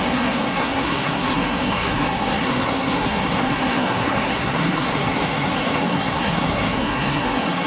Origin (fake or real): fake